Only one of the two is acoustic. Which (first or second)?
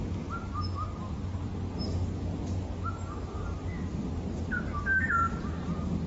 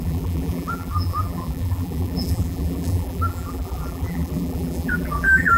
first